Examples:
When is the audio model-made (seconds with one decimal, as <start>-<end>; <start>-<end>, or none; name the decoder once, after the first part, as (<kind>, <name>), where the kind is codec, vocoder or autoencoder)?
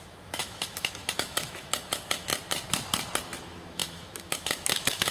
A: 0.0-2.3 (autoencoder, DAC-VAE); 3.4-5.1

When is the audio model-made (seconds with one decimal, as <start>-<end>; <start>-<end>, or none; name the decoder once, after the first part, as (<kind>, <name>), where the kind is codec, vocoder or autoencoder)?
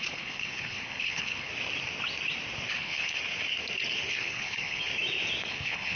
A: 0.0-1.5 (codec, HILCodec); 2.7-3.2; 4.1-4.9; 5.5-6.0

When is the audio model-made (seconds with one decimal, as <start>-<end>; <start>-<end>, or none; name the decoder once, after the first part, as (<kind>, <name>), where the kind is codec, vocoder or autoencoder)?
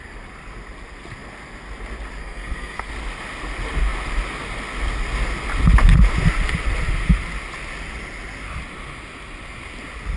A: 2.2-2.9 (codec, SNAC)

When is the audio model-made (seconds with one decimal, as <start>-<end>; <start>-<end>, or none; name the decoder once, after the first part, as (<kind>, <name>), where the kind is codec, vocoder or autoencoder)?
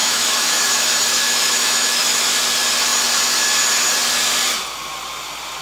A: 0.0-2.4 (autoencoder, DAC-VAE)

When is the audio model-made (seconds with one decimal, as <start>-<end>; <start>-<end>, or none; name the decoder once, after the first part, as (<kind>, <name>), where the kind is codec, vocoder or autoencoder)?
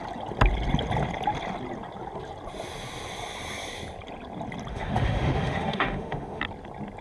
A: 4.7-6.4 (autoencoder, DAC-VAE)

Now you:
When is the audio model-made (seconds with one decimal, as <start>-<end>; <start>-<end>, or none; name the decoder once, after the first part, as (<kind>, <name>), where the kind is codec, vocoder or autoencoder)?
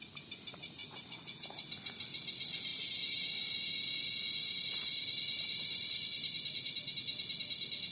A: 0.8-1.6 (vocoder, BigVGAN v2); 2.7-3.3; 6.1-6.9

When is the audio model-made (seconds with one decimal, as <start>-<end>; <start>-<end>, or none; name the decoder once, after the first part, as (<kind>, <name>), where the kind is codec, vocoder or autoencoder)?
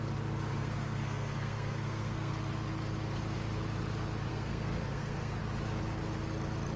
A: 0.6-2.3 (codec, SNAC); 4.3-5.4